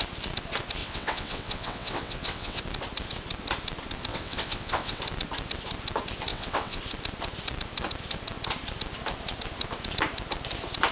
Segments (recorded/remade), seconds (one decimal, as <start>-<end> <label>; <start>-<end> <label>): 0.0-0.8 recorded; 0.8-2.6 remade; 2.6-4.1 recorded; 4.1-5.0 remade; 5.0-6.3 recorded; 6.3-6.8 remade; 6.8-10.9 recorded